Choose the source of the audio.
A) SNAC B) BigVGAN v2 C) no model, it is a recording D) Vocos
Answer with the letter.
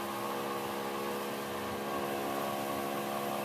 C